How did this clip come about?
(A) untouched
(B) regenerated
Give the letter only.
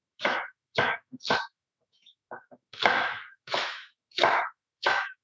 B